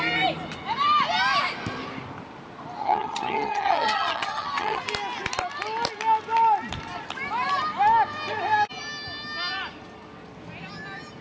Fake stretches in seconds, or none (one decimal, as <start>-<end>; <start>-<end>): 2.8-4.8